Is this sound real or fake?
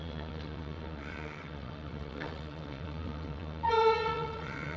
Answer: fake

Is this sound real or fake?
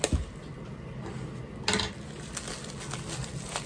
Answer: real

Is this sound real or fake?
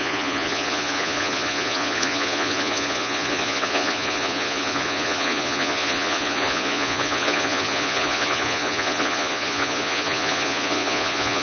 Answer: fake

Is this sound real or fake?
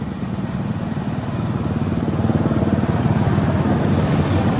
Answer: real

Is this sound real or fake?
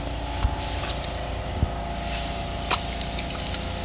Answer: real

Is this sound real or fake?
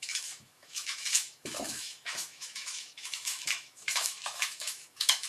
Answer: fake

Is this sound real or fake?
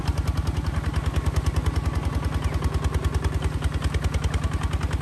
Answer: real